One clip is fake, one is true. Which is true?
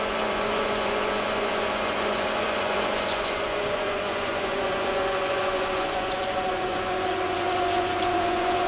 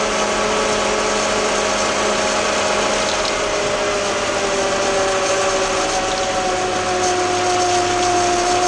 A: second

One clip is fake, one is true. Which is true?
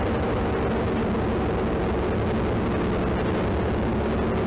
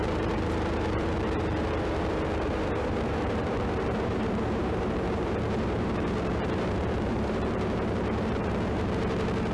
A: first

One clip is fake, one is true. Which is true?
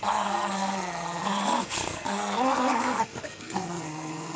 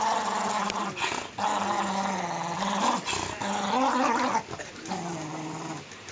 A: second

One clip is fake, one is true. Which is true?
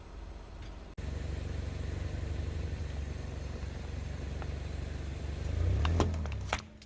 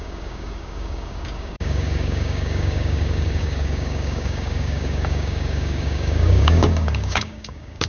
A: first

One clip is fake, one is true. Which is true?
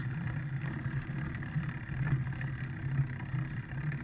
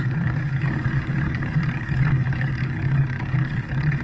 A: first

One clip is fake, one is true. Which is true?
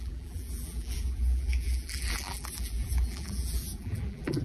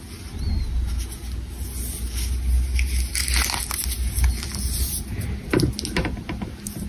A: second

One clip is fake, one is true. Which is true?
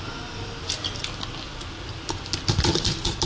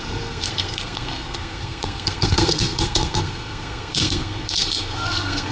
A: first